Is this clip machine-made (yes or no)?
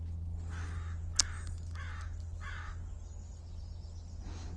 no